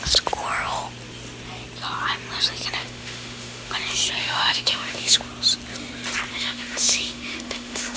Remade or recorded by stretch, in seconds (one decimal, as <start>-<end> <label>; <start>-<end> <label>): 0.0-2.8 recorded; 2.8-3.7 remade; 3.7-4.2 recorded; 4.2-5.2 remade; 5.2-6.3 recorded; 6.3-8.0 remade